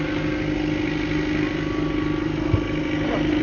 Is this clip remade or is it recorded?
recorded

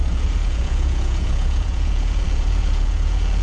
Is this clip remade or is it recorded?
remade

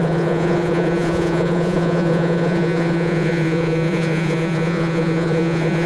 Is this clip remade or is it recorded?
remade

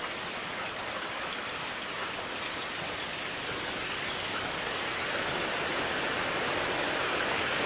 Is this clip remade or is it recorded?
recorded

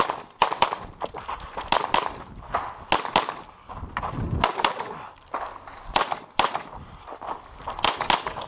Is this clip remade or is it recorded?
recorded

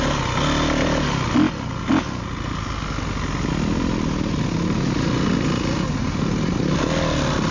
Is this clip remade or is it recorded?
recorded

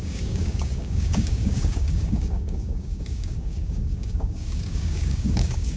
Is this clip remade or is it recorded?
remade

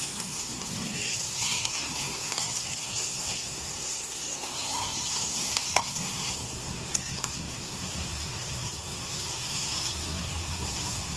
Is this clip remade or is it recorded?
remade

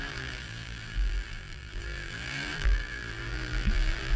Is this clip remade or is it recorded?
remade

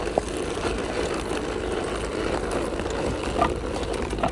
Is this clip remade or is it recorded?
recorded